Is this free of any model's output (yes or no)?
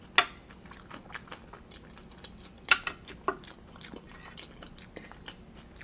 yes